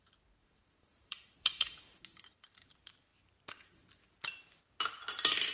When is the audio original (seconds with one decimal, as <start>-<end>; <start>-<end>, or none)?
0.0-0.4; 2.0-5.5